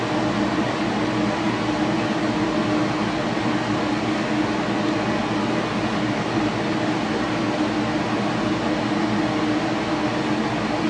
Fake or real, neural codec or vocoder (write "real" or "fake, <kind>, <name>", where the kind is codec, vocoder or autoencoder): real